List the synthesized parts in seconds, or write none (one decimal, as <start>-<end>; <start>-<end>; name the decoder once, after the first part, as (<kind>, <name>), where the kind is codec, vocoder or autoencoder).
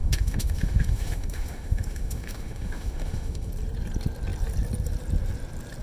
0.0-3.5 (autoencoder, DAC-VAE)